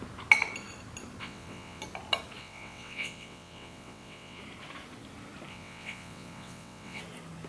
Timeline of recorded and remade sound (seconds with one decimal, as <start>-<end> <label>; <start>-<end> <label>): 0.0-1.2 recorded; 1.2-1.8 remade; 1.8-2.4 recorded; 2.4-4.4 remade; 4.4-5.5 recorded; 5.5-7.0 remade; 7.0-7.5 recorded